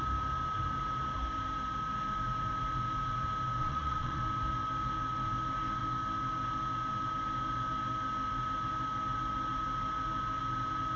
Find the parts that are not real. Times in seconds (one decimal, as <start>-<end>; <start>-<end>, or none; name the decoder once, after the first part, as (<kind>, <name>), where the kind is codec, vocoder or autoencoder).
3.6-4.2 (vocoder, Vocos)